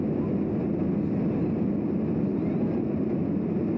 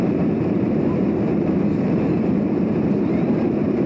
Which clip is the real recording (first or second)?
first